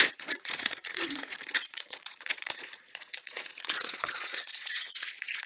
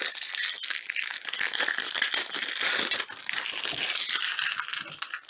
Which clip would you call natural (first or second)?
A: second